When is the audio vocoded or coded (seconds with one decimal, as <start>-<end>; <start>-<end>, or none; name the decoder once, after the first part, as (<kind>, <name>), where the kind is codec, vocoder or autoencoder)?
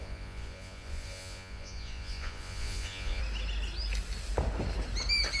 0.0-3.2 (vocoder, Vocos)